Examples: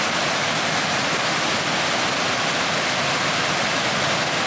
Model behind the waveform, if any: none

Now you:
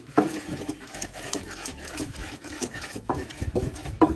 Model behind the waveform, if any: autoencoder, DAC-VAE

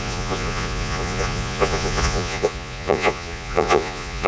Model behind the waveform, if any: vocoder, Vocos